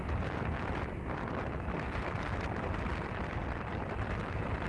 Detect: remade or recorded remade